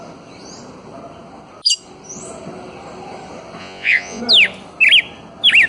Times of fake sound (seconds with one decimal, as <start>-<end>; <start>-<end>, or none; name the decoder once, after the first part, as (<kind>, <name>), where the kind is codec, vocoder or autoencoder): 3.6-4.2 (vocoder, Vocos)